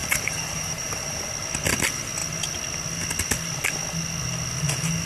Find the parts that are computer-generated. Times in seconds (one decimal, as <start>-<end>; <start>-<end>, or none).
0.0-1.3